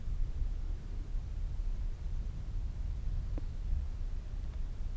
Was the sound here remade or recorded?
recorded